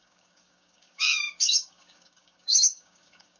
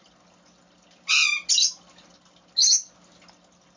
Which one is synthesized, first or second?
first